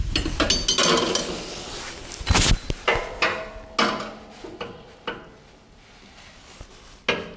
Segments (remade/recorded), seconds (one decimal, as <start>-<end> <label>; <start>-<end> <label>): 0.0-7.4 recorded